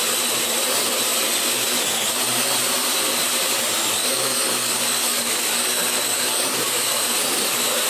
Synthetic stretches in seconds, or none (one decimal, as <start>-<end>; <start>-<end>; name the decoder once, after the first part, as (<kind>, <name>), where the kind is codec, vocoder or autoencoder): 4.0-7.0 (codec, DAC)